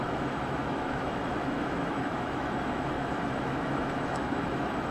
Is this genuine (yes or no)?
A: no